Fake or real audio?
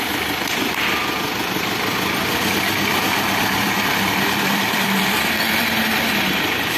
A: fake